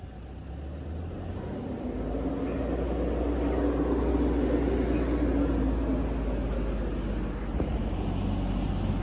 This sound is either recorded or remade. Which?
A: recorded